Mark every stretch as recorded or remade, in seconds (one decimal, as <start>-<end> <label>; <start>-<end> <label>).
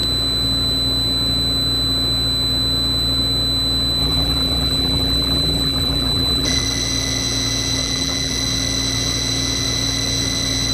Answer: 0.0-4.0 recorded; 4.0-6.6 remade; 6.6-7.8 recorded; 7.8-8.3 remade; 8.3-10.7 recorded